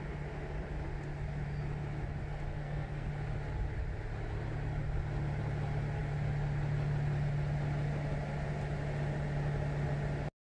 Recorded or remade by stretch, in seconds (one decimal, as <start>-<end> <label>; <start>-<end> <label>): 0.0-2.5 recorded; 2.5-3.1 remade; 3.1-10.6 recorded